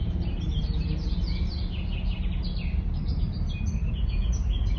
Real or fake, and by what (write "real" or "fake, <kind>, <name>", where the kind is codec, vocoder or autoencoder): real